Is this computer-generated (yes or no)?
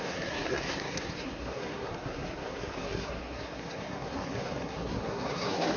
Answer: yes